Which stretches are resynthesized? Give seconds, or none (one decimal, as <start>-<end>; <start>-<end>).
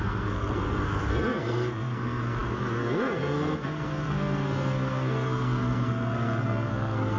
0.0-7.2